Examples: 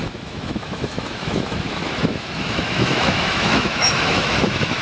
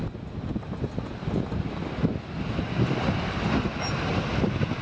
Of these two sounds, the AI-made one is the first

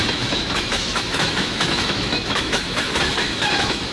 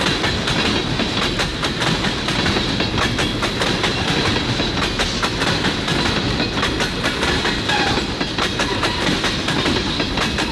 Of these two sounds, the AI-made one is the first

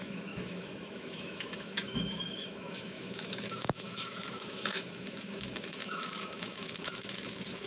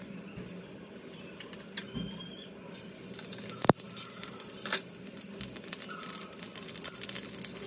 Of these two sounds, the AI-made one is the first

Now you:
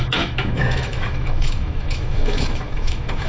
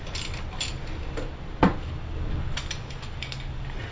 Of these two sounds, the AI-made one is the first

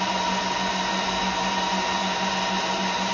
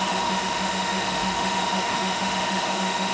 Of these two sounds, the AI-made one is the second